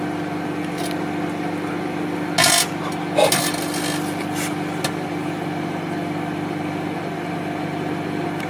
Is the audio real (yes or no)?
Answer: yes